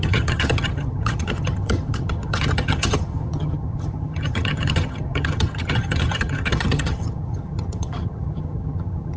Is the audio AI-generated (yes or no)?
yes